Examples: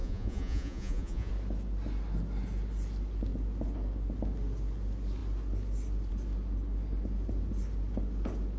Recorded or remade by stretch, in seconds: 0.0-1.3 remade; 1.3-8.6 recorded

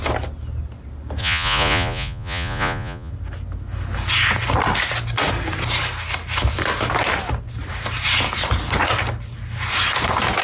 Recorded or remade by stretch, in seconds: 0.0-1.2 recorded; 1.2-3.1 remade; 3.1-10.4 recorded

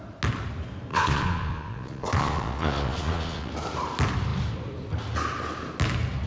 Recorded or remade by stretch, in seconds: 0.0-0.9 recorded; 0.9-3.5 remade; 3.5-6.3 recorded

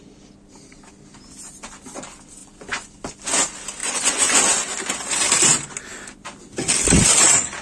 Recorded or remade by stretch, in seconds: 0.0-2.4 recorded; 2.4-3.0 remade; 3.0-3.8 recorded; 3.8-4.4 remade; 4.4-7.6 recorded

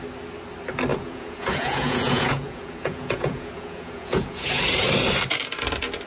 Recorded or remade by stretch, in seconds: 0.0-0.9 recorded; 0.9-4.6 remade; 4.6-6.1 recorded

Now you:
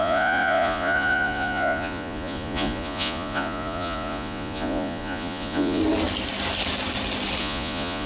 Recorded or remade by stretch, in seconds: 0.0-5.8 remade; 5.8-7.4 recorded; 7.4-8.1 remade

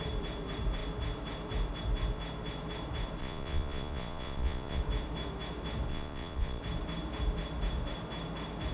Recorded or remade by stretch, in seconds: 0.0-3.2 recorded; 3.2-4.8 remade; 4.8-5.9 recorded; 5.9-6.6 remade; 6.6-8.7 recorded

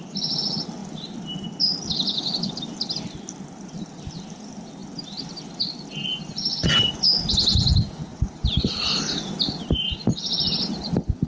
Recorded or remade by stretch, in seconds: 0.0-11.3 recorded